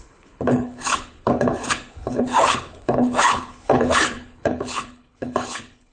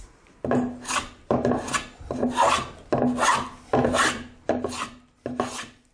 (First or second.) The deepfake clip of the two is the first